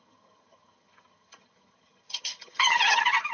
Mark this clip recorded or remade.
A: remade